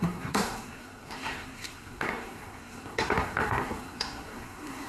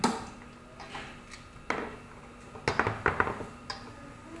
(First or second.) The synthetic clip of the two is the first